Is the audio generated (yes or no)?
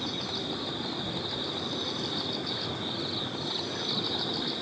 no